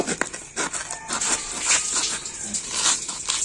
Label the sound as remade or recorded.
recorded